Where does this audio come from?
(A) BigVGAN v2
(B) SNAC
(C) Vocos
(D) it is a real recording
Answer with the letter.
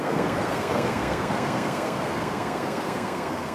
B